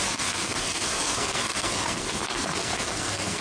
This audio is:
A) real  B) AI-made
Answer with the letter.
B